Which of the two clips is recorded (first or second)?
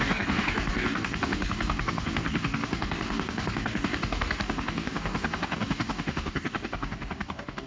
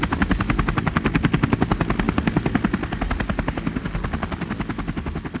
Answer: second